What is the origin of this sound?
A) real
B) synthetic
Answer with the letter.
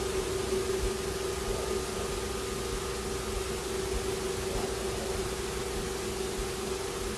A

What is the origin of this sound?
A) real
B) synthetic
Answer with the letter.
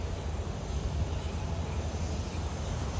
A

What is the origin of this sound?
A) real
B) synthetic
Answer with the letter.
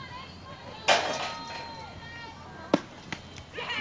A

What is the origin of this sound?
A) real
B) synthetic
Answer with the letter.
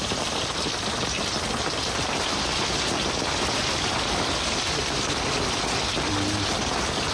A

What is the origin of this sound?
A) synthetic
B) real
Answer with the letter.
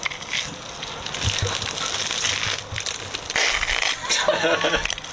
B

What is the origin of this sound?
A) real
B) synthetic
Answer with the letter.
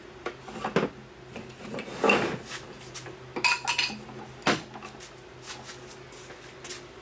A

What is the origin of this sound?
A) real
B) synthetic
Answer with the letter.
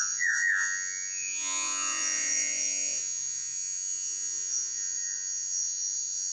B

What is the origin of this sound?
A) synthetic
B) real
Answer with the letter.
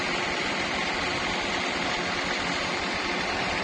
B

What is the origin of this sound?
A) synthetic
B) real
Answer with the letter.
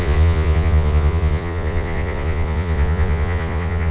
A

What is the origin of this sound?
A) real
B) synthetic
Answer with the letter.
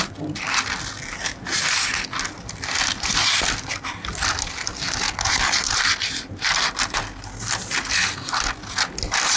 A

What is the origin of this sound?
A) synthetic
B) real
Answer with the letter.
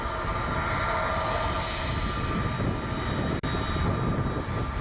B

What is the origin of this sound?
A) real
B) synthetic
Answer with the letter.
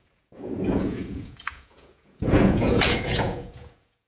B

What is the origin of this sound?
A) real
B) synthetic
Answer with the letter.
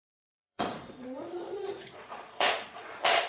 B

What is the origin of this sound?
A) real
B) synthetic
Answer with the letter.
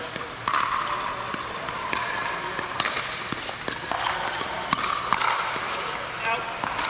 A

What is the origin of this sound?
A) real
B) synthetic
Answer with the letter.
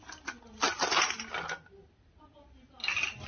A